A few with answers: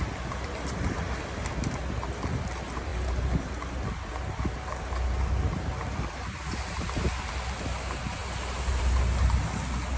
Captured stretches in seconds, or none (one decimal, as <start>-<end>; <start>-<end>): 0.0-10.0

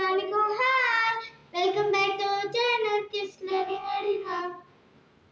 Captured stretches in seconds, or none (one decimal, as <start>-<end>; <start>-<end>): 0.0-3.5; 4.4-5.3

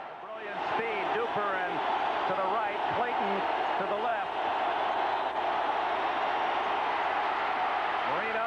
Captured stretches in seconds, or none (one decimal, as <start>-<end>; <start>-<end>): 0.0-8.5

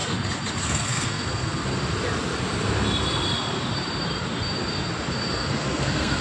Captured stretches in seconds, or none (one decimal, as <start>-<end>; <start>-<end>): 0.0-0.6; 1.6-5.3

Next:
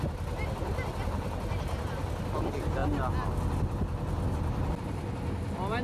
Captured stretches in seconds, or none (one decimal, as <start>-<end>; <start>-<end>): 0.0-5.8

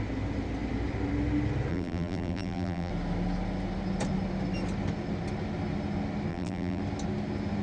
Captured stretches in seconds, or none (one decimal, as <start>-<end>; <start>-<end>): 0.0-1.7; 2.9-6.3; 6.8-7.6